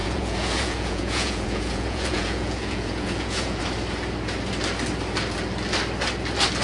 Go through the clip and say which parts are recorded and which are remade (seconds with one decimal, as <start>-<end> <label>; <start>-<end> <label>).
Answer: 0.0-3.6 remade; 3.6-6.6 recorded